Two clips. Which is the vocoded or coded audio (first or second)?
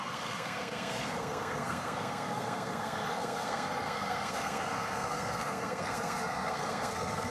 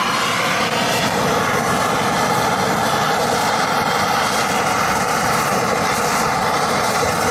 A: first